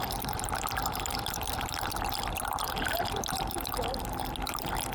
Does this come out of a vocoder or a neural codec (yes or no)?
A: no